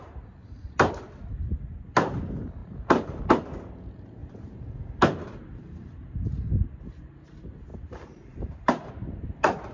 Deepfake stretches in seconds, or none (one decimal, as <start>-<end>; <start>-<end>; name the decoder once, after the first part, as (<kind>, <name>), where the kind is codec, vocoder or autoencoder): 2.6-3.2 (vocoder, BigVGAN v2); 4.2-6.8; 7.7-8.9